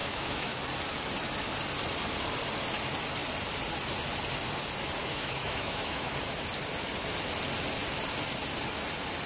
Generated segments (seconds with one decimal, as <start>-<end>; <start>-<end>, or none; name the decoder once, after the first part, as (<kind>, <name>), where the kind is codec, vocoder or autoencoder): 0.0-0.6 (autoencoder, DAC-VAE); 5.0-6.1